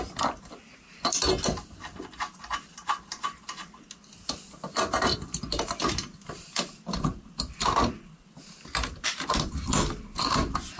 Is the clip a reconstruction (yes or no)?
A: no